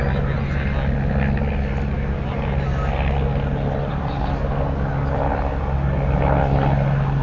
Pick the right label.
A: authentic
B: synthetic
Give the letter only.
A